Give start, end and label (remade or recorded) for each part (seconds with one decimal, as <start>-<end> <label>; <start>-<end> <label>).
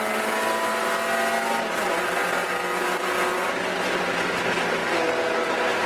0.0-5.9 recorded